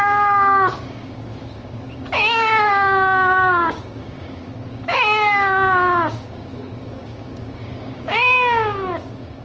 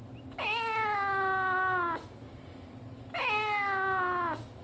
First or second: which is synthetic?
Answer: first